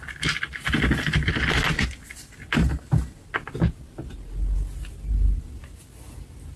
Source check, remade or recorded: recorded